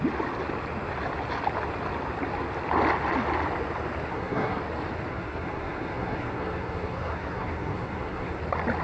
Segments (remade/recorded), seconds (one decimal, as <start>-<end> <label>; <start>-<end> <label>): 0.0-4.1 recorded; 4.1-4.6 remade; 4.6-5.1 recorded; 5.1-8.4 remade; 8.4-8.8 recorded